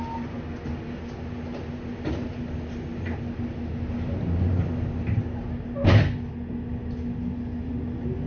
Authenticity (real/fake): real